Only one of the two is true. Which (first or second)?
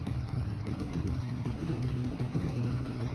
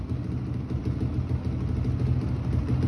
second